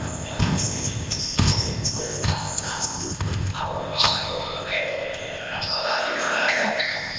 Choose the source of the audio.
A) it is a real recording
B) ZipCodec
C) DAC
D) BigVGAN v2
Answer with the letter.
B